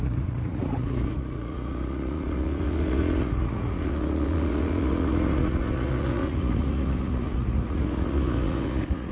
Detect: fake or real fake